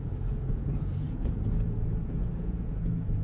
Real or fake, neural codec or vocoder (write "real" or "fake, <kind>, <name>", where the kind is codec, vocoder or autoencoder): fake, vocoder, Vocos